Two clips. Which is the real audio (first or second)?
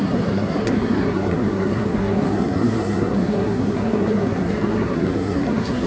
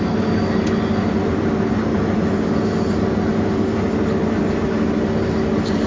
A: second